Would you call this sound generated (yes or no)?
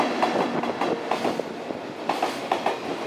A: no